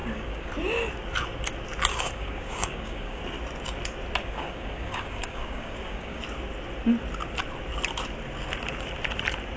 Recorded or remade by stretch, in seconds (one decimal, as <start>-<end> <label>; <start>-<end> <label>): 0.0-0.5 remade; 0.5-1.9 recorded; 1.9-3.2 remade; 3.2-4.2 recorded; 4.2-6.2 remade; 6.2-9.6 recorded